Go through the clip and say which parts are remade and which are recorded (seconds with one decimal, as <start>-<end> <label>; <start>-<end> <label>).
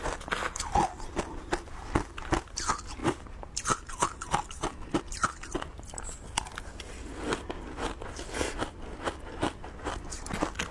0.0-3.0 recorded; 3.0-5.0 remade; 5.0-10.7 recorded